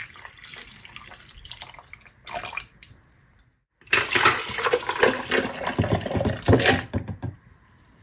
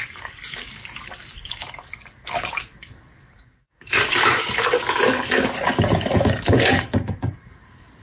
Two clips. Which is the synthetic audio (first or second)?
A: second